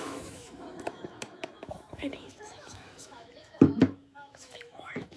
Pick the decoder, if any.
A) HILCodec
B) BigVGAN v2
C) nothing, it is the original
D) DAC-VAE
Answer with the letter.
D